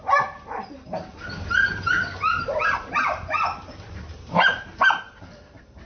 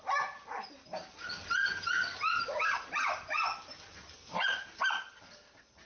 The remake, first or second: first